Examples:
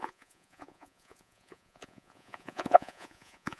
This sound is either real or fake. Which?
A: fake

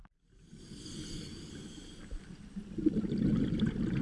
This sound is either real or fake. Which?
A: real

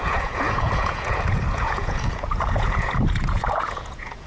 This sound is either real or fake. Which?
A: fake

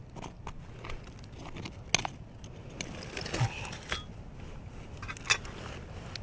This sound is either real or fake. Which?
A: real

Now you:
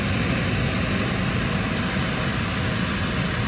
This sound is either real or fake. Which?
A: real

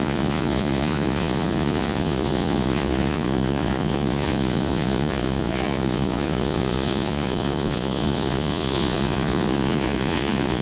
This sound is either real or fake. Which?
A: fake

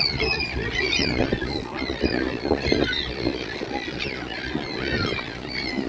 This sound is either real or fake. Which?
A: fake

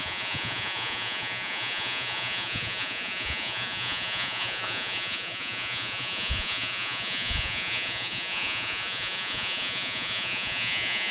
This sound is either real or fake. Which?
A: fake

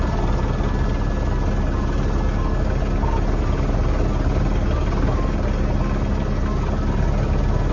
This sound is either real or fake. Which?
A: real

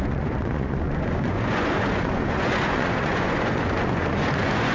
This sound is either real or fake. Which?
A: fake